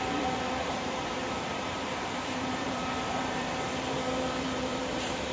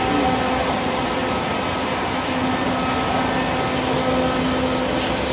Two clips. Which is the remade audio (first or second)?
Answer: first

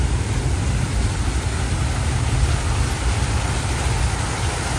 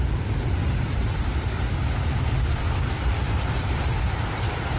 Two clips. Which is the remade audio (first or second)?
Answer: second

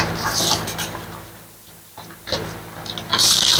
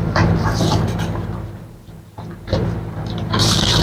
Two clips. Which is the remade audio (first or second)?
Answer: second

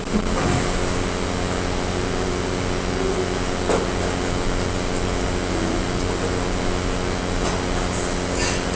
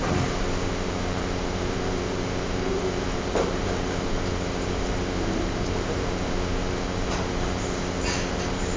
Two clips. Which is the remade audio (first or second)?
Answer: second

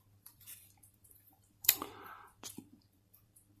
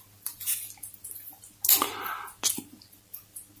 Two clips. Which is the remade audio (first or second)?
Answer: first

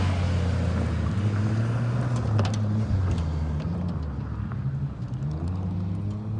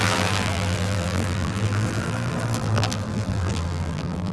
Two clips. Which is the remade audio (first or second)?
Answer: second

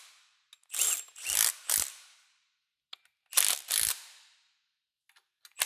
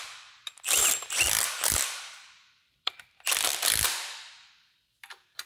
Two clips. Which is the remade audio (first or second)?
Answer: second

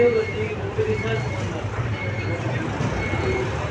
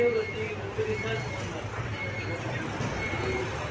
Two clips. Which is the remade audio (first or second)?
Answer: first